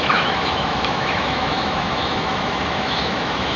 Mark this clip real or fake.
fake